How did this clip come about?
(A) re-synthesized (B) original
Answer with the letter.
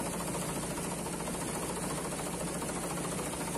B